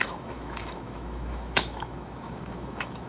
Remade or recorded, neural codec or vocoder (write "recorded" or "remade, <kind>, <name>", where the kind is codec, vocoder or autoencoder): remade, autoencoder, DAC-VAE